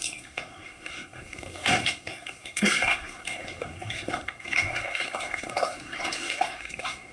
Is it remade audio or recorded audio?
remade